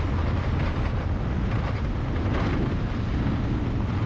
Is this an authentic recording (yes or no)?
yes